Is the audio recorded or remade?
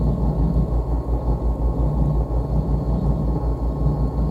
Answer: recorded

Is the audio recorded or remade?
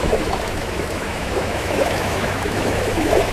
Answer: remade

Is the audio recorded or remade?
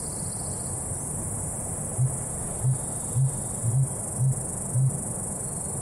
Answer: recorded